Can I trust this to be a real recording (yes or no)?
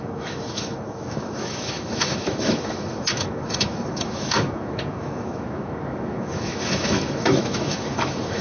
no